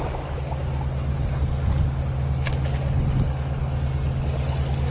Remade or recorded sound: recorded